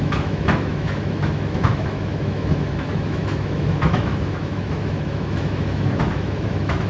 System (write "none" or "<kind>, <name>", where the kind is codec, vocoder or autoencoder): autoencoder, DAC-VAE